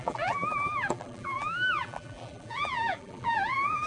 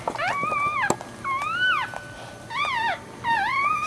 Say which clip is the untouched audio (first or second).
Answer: second